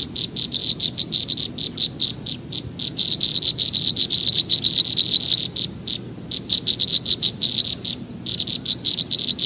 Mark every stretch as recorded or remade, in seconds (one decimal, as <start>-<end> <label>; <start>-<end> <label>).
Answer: 0.0-9.5 recorded